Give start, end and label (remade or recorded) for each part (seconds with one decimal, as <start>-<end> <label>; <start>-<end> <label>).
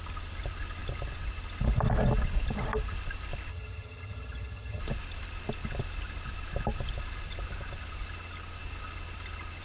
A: 0.0-3.5 recorded; 3.5-4.8 remade; 4.8-9.6 recorded